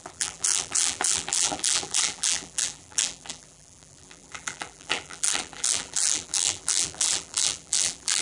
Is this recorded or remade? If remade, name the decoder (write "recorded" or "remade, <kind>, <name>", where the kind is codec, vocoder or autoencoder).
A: remade, vocoder, BigVGAN v2